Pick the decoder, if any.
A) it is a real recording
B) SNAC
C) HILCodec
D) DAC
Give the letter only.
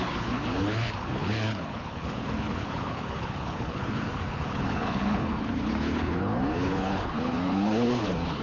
C